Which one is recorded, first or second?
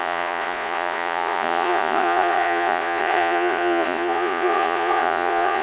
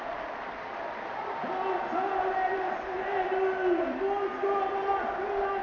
second